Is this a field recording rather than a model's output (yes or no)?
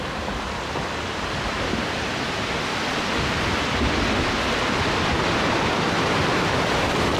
yes